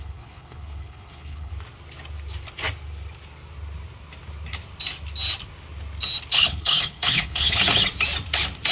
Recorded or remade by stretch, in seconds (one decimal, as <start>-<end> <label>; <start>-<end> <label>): 0.0-1.5 remade; 1.5-6.3 recorded; 6.3-7.6 remade; 7.6-8.7 recorded